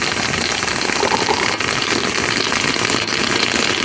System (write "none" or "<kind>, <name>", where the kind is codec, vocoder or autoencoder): none